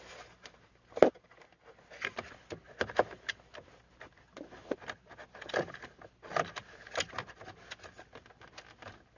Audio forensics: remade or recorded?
recorded